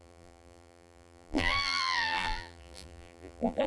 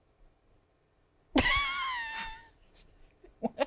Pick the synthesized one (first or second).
first